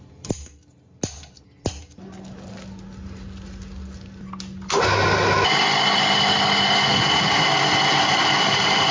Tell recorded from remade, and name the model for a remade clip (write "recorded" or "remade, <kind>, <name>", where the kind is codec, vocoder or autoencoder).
recorded